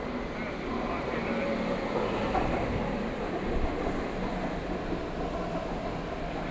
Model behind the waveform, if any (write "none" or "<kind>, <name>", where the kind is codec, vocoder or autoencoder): none